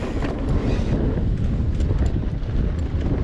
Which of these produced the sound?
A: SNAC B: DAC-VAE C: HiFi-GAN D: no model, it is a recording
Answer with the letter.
D